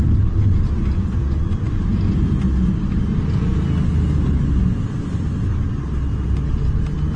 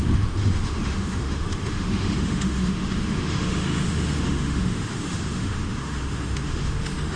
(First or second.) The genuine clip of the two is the first